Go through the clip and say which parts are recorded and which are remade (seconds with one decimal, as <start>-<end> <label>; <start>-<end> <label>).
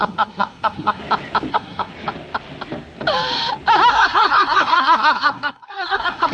0.0-1.0 remade; 1.0-1.5 recorded; 1.5-1.9 remade; 1.9-3.9 recorded; 3.9-6.3 remade